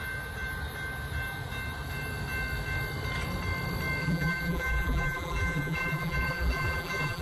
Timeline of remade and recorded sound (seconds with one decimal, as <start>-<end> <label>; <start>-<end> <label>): 0.0-4.0 recorded; 4.0-7.2 remade